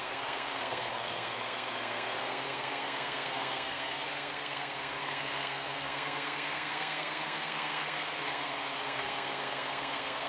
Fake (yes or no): yes